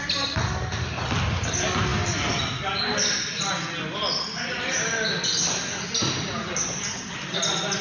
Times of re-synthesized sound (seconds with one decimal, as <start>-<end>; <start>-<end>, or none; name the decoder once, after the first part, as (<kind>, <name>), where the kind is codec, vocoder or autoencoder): none